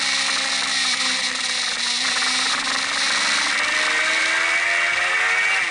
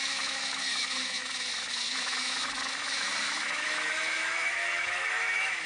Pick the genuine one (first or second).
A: first